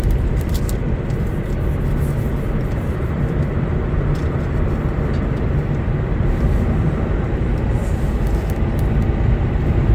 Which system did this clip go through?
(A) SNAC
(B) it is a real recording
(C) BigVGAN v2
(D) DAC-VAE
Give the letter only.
C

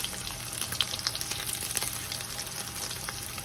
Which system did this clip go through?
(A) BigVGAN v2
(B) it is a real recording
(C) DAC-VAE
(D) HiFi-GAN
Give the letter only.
B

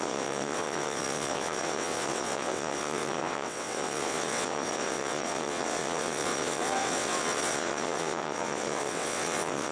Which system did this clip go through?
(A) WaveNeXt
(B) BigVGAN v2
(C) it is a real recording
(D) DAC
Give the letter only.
A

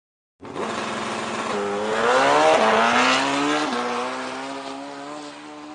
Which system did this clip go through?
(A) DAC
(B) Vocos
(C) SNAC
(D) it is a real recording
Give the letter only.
D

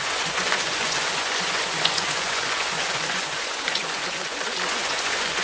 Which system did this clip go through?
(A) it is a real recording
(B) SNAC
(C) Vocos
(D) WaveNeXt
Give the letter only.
C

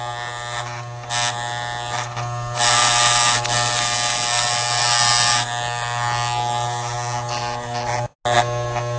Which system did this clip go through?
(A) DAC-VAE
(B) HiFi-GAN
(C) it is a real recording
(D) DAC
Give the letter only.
C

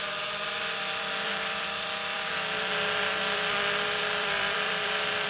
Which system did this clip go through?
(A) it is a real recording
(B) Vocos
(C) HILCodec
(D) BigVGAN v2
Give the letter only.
D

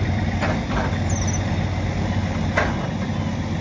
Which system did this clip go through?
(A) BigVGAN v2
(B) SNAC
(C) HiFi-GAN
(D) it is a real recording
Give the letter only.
D